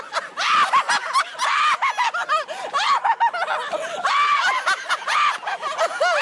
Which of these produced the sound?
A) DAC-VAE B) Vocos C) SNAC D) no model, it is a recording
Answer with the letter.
D